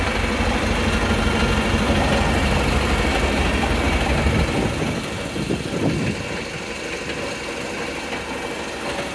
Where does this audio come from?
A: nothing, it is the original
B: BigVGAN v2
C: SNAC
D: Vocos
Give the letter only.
A